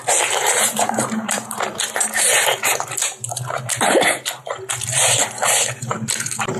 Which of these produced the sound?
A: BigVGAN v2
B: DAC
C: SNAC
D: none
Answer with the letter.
A